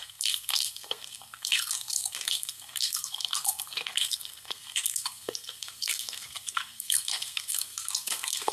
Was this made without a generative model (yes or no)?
no